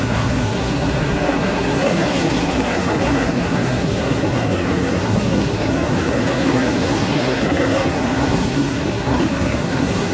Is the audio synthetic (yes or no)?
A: yes